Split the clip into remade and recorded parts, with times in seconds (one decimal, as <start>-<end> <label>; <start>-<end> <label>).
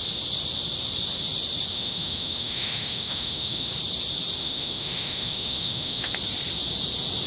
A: 0.0-1.7 recorded; 1.7-3.7 remade; 3.7-4.4 recorded; 4.4-6.1 remade; 6.1-7.3 recorded